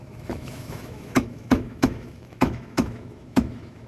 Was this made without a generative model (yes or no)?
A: no